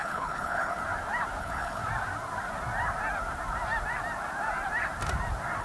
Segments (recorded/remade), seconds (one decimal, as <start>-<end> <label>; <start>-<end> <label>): 0.0-0.8 remade; 0.8-1.4 recorded; 1.4-1.8 remade; 1.8-5.6 recorded